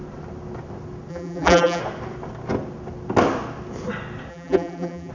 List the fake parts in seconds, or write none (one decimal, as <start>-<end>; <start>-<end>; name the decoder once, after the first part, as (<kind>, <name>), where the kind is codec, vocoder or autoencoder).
1.1-1.8 (vocoder, BigVGAN v2); 4.3-5.1